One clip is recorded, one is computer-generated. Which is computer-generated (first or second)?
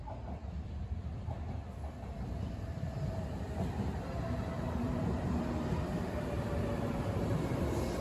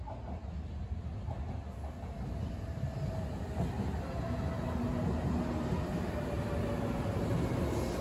first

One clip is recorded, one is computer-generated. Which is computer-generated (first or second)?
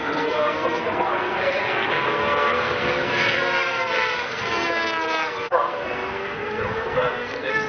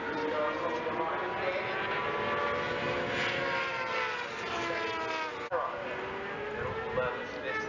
first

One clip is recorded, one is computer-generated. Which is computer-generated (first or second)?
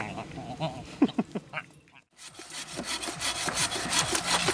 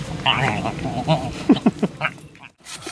second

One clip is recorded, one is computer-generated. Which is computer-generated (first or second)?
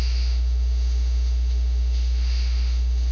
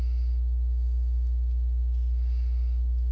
first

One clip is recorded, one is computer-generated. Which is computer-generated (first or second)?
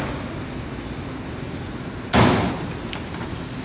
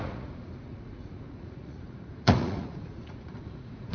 second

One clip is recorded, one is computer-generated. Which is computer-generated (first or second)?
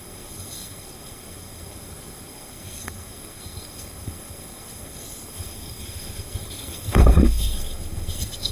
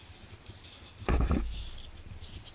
first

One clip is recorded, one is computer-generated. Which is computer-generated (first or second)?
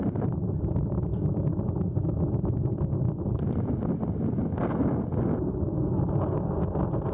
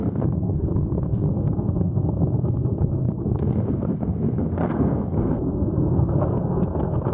second